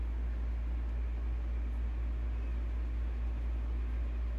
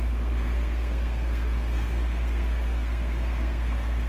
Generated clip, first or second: second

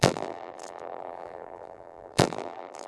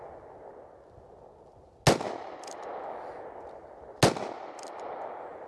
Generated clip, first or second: first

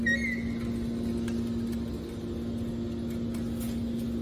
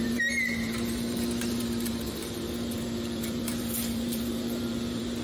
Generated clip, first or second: second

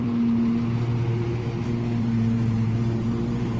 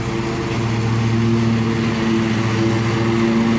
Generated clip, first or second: first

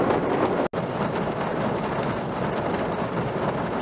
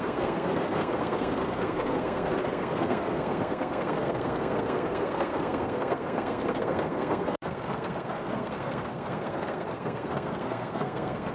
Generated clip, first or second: second